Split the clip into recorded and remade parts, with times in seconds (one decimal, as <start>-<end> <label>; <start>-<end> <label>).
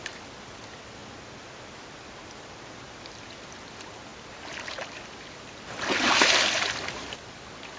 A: 0.0-7.8 recorded